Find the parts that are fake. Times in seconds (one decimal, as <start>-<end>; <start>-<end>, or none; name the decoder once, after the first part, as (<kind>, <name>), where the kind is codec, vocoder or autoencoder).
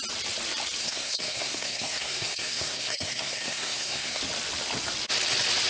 0.8-4.2 (codec, SNAC)